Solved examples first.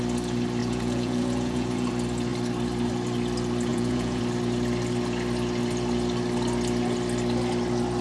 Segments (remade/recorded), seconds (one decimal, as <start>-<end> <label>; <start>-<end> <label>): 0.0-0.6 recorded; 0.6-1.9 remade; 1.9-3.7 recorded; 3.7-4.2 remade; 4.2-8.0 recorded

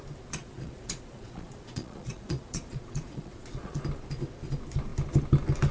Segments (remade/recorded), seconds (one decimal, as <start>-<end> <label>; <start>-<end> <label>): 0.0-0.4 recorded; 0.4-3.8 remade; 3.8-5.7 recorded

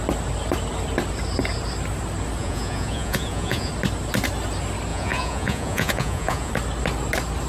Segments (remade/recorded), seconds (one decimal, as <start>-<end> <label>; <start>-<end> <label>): 0.0-2.4 recorded; 2.4-3.7 remade; 3.7-4.9 recorded; 4.9-6.5 remade; 6.5-7.5 recorded

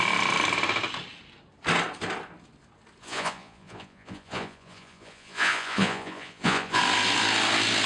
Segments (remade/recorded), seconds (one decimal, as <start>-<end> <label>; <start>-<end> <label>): 0.0-3.0 recorded; 3.0-6.8 remade; 6.8-7.9 recorded

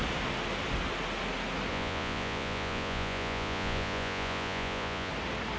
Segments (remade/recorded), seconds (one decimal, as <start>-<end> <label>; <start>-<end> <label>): 0.0-1.7 recorded; 1.7-5.1 remade; 5.1-5.6 recorded